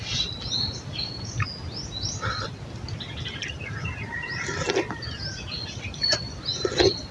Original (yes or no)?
yes